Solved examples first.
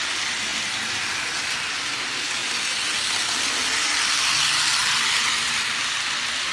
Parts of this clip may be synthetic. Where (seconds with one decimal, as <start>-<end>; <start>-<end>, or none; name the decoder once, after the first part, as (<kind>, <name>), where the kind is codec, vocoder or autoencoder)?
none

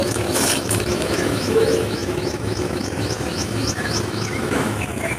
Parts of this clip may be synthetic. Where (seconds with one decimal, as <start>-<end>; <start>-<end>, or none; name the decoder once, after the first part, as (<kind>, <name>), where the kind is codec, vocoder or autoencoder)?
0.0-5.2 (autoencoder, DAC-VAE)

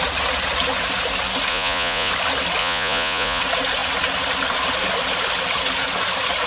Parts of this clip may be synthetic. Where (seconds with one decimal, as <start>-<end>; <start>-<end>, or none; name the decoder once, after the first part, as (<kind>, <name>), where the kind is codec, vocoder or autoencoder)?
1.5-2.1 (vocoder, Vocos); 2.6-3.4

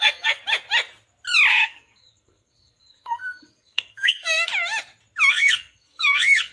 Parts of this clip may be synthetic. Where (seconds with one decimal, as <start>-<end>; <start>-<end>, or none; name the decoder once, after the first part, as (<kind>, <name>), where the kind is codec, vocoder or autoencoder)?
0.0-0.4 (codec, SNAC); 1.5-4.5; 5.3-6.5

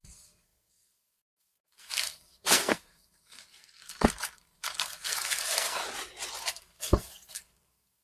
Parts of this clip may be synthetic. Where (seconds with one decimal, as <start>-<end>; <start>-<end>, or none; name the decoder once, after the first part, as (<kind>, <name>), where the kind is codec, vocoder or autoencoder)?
0.0-5.8 (codec, SNAC); 6.4-8.0